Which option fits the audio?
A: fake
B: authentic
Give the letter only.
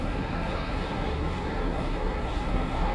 A